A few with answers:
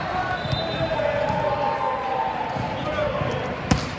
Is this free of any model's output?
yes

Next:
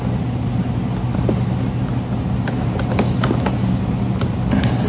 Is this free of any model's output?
yes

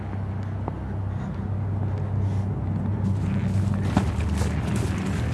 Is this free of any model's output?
yes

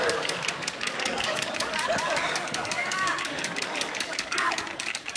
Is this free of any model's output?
no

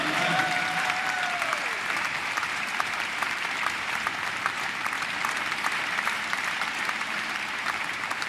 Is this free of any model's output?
no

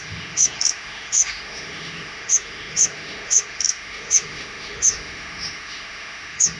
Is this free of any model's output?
no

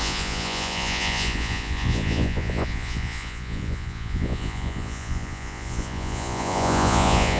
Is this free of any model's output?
no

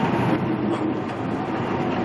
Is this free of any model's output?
yes